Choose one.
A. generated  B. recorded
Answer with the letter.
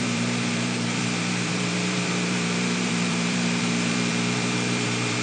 A